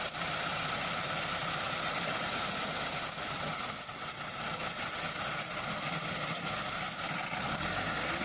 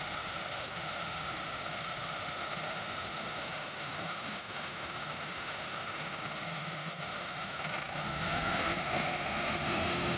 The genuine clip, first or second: first